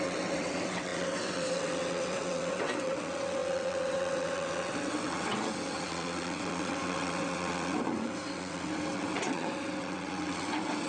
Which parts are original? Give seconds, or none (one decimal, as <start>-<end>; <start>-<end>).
none